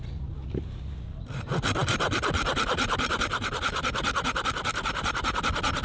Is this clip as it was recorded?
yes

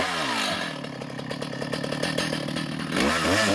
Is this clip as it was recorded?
yes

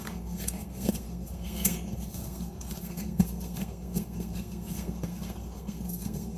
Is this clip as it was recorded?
no